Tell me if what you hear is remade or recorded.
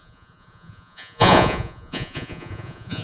remade